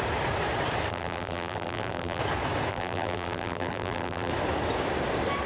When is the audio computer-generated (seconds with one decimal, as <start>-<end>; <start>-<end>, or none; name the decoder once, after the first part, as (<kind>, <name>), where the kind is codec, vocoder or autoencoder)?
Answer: 0.9-2.2 (vocoder, BigVGAN v2); 2.7-4.3